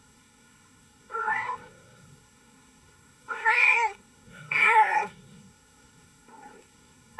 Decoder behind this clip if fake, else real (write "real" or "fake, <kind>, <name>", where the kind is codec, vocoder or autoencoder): fake, codec, SNAC